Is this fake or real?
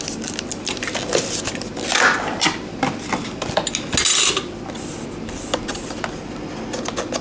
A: real